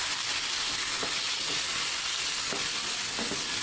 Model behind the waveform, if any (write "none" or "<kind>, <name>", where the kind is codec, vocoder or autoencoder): none